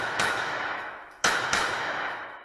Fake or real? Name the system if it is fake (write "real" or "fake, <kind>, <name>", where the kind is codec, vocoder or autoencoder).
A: fake, autoencoder, DAC-VAE